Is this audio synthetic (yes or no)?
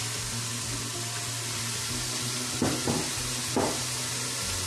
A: no